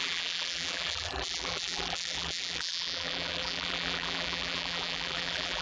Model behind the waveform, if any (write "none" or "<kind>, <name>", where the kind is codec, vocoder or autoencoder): vocoder, BigVGAN v2